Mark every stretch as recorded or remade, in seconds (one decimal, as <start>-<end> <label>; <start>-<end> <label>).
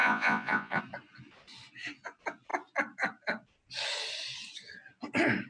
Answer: 0.0-0.8 remade; 0.8-5.5 recorded